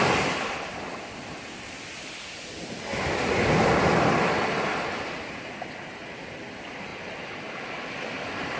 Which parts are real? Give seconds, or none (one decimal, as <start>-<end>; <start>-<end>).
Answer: 0.0-8.6